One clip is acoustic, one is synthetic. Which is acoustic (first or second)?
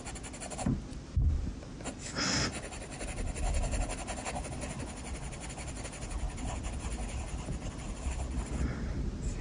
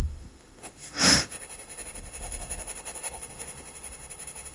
first